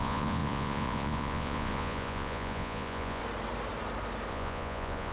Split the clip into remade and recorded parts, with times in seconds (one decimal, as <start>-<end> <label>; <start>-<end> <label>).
0.0-3.2 remade; 3.2-4.3 recorded; 4.3-5.1 remade